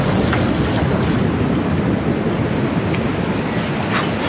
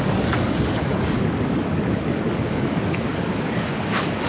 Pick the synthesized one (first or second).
second